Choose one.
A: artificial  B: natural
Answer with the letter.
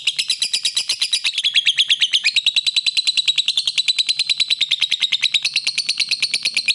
B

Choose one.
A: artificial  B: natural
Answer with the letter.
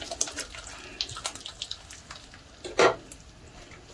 B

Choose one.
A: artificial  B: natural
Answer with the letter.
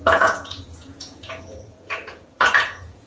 A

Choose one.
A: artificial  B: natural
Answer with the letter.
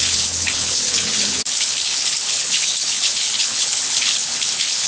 A